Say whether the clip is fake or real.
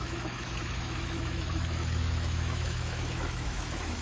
fake